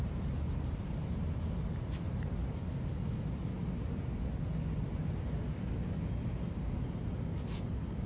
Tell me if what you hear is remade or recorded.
recorded